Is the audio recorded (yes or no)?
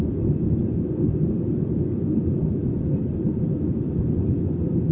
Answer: yes